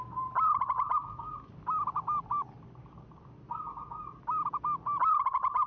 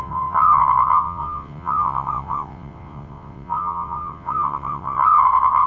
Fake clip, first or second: second